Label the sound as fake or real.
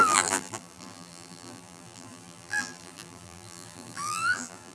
fake